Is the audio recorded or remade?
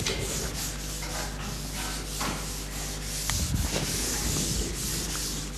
recorded